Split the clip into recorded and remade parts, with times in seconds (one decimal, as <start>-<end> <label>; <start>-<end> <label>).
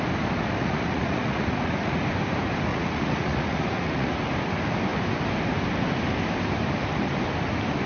0.0-0.6 recorded; 0.6-2.0 remade; 2.0-2.7 recorded; 2.7-4.2 remade; 4.2-7.9 recorded